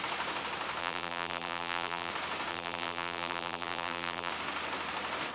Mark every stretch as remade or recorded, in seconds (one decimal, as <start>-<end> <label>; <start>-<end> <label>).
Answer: 0.0-0.8 recorded; 0.8-2.1 remade; 2.1-2.5 recorded; 2.5-4.3 remade; 4.3-5.3 recorded

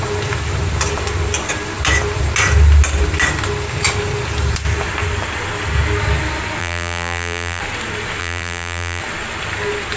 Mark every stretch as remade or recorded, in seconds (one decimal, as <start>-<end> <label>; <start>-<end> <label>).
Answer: 0.0-6.6 recorded; 6.6-7.6 remade; 7.6-8.2 recorded; 8.2-9.0 remade; 9.0-10.0 recorded

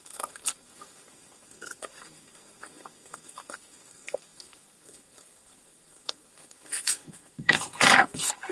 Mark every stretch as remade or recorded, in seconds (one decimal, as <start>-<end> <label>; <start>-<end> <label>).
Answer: 0.0-8.5 remade

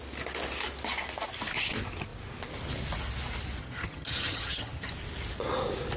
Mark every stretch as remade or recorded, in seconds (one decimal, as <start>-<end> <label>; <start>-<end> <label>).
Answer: 0.0-3.6 recorded; 3.6-4.9 remade; 4.9-6.0 recorded

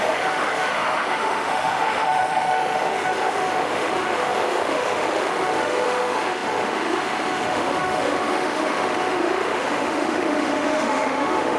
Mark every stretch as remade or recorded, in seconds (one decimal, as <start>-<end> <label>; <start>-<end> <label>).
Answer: 0.0-11.6 remade

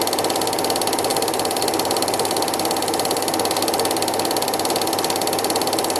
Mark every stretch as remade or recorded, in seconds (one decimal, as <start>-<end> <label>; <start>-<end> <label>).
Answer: 0.0-6.0 recorded